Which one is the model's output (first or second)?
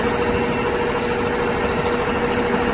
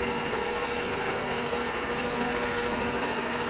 second